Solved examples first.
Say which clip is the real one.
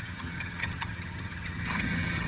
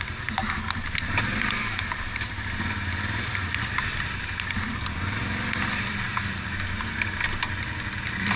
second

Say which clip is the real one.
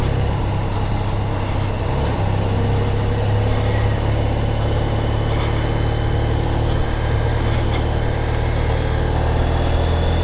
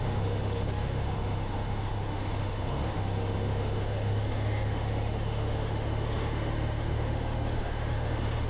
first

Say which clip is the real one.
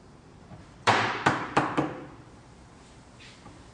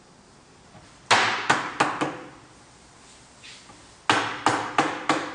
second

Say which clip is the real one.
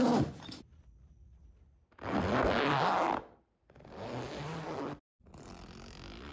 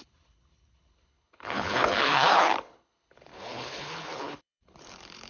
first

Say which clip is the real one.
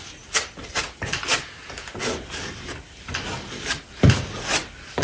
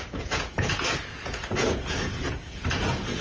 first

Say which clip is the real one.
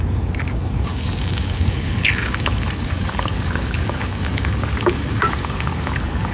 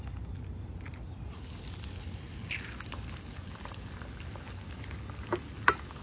second